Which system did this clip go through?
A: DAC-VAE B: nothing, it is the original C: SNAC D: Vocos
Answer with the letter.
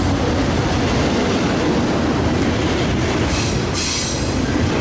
B